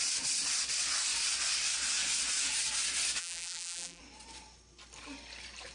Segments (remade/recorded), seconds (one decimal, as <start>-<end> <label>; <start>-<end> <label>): 0.0-3.2 recorded; 3.2-4.0 remade; 4.0-5.7 recorded